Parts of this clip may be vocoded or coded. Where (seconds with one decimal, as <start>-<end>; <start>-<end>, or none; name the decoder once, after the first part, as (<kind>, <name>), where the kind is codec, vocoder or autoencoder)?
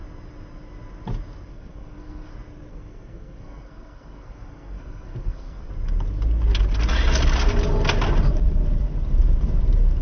1.5-2.3 (codec, SNAC); 2.7-5.7